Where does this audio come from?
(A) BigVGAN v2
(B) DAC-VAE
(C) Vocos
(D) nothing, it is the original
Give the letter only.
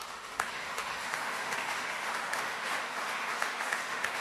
B